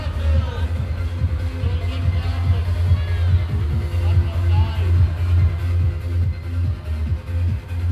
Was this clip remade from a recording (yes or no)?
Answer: no